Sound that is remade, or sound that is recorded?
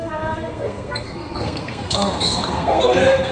remade